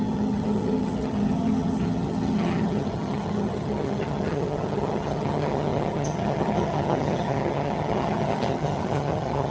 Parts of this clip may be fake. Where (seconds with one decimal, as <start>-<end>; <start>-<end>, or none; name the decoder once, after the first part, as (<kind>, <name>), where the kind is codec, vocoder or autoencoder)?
0.0-9.5 (vocoder, HiFi-GAN)